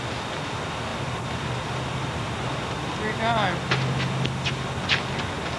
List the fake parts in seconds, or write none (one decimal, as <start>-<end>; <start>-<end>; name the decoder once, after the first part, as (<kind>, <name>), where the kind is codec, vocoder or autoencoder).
none